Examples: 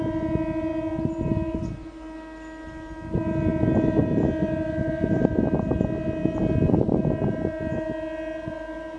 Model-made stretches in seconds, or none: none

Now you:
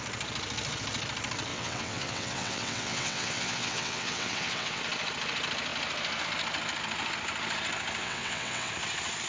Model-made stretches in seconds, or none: 1.5-4.8; 8.0-8.7

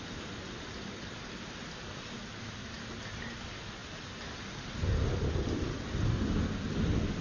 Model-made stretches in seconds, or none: none